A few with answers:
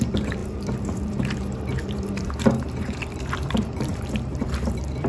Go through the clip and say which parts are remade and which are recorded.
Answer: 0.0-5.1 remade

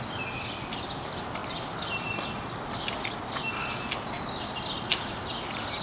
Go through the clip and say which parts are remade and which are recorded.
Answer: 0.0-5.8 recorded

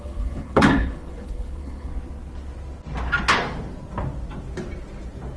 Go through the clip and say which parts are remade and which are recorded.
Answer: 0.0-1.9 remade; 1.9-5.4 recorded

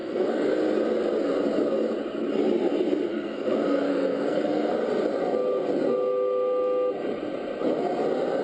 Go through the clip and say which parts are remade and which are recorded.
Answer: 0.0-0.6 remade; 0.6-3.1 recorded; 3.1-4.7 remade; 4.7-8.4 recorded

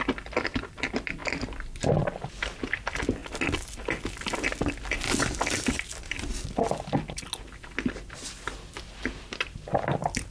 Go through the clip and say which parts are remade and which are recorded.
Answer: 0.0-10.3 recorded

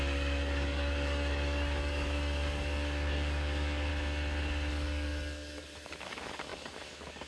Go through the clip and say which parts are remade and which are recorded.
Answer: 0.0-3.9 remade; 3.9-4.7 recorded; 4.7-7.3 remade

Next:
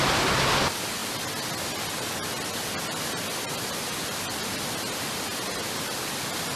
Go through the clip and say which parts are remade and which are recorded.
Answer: 0.0-6.6 recorded